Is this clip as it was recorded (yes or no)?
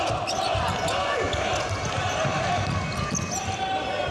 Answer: yes